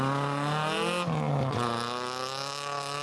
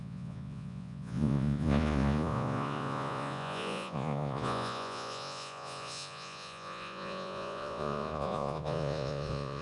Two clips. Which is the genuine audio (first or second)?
first